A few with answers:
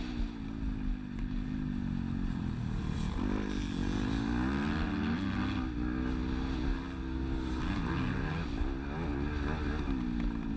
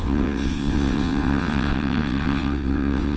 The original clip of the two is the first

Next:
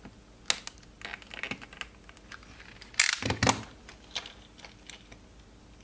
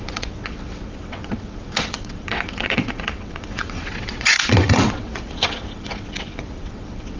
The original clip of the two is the first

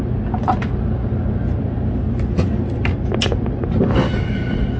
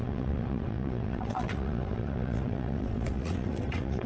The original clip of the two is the first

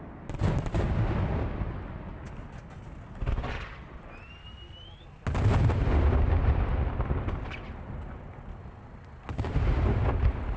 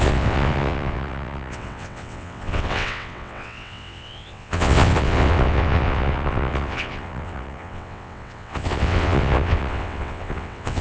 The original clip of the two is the first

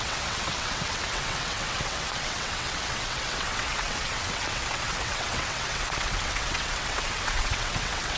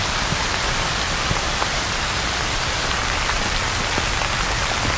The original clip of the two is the second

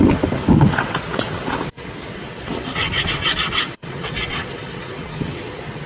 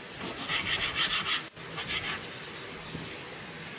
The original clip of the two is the second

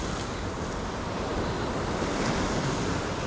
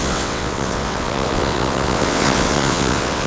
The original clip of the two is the first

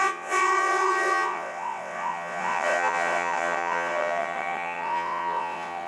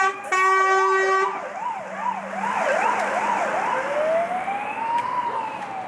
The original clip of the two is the second